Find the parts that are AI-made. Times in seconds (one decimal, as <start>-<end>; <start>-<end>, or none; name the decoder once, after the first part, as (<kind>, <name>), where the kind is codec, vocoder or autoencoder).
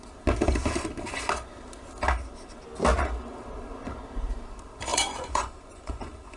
4.9-6.4 (vocoder, Vocos)